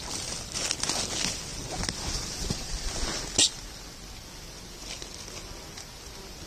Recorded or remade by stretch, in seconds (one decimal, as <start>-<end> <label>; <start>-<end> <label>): 0.0-6.5 recorded

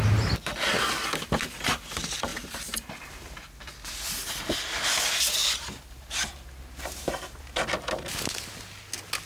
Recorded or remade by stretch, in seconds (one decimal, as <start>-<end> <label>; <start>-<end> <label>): 0.0-2.3 recorded; 2.3-3.1 remade; 3.1-5.4 recorded; 5.4-7.4 remade; 7.4-9.3 recorded

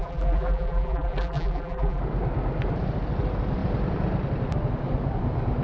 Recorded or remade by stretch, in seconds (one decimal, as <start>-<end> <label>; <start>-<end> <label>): 0.0-2.0 remade; 2.0-5.6 recorded

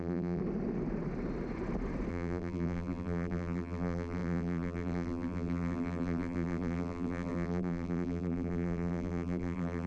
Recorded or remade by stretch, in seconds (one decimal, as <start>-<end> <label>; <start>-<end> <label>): 0.0-0.4 remade; 0.4-2.1 recorded; 2.1-9.9 remade

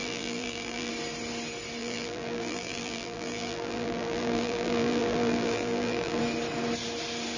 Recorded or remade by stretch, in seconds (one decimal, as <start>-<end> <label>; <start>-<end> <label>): 0.0-0.9 remade; 0.9-1.8 recorded; 1.8-6.2 remade; 6.2-7.4 recorded

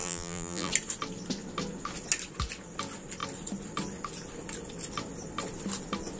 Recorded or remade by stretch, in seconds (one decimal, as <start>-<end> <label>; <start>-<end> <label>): 0.0-0.7 remade; 0.7-6.2 recorded